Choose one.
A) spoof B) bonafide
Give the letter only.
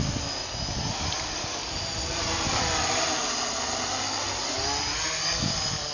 B